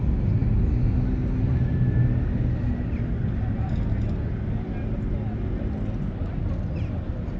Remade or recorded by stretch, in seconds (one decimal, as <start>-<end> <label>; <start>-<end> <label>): 0.0-7.4 recorded